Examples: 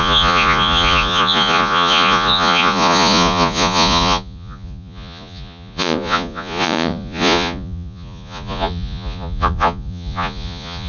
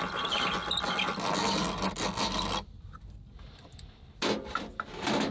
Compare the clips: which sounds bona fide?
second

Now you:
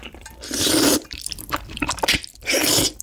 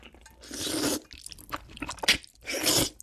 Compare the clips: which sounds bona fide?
second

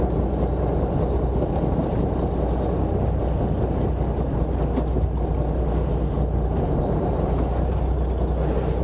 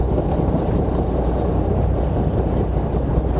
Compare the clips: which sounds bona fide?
first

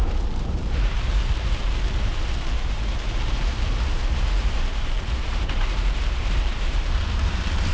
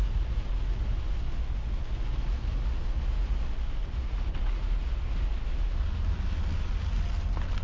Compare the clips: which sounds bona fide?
second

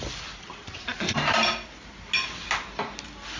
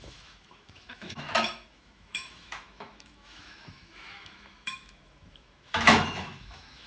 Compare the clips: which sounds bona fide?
first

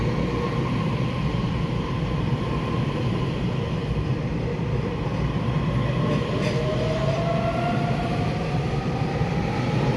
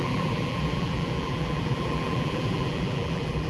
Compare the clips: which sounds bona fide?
first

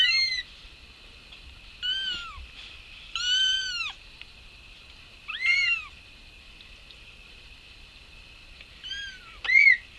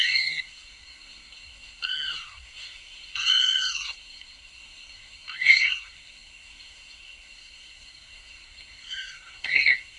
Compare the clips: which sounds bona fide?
first